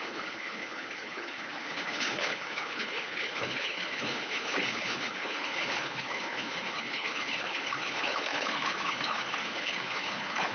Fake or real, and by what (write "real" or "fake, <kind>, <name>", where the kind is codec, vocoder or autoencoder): fake, codec, HILCodec